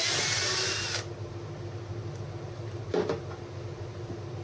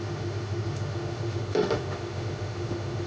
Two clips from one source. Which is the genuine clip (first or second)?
first